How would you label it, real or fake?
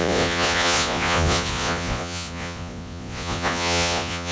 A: fake